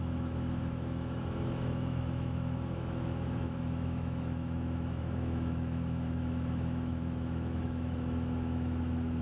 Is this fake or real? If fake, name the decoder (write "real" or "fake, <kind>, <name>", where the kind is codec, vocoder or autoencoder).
fake, autoencoder, DAC-VAE